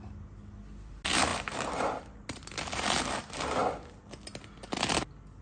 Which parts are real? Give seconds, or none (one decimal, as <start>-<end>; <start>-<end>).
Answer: 0.0-5.4